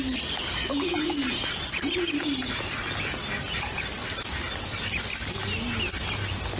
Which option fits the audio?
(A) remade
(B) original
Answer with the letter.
B